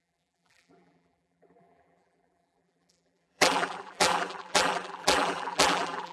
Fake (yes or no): yes